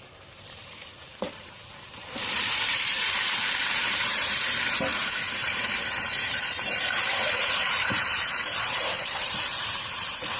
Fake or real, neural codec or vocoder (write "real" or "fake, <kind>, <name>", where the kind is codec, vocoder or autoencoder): fake, vocoder, BigVGAN v2